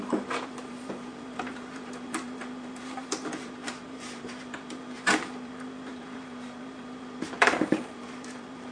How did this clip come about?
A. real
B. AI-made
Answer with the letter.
B